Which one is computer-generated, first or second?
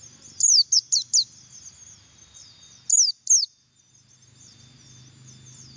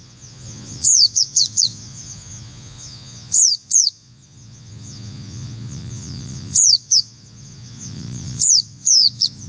second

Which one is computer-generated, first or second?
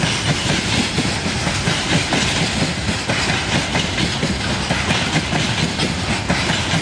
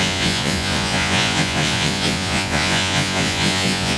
second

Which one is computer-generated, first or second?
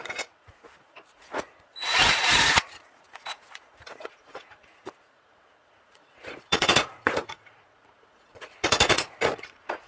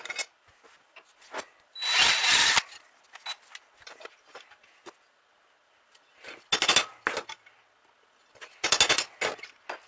first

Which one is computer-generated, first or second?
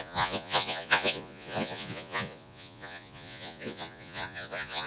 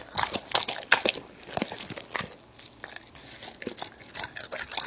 first